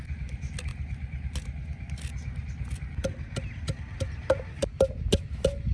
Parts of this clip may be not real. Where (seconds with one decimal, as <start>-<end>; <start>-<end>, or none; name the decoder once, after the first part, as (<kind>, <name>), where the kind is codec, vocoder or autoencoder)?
none